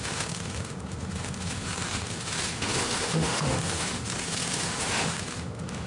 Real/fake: fake